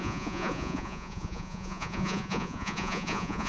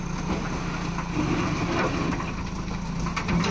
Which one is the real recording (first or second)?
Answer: second